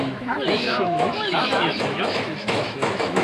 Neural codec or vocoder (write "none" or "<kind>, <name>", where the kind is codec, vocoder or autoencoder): autoencoder, DAC-VAE